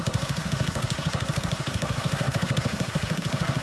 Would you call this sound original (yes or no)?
no